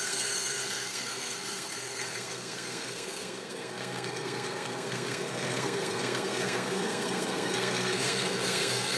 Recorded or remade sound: remade